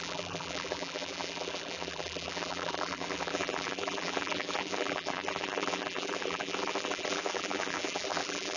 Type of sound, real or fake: fake